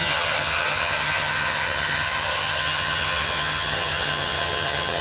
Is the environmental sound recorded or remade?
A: remade